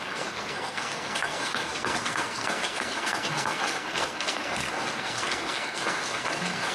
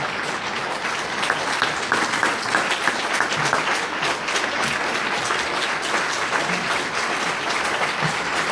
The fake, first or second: first